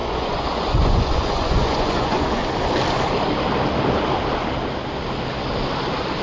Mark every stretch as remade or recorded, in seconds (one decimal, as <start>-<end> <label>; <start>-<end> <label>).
0.0-2.4 remade; 2.4-6.2 recorded